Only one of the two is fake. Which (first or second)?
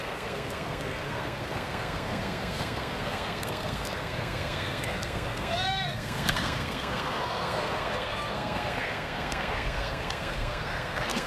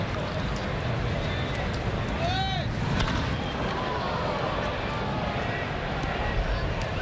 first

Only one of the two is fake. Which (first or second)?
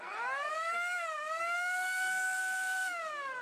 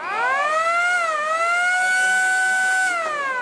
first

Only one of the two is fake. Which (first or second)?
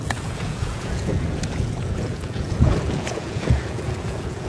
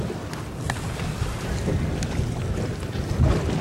first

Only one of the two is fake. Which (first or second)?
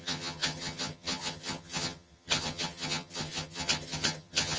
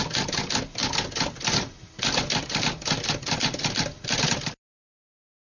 first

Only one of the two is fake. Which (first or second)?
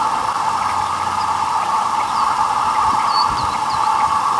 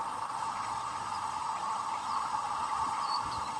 second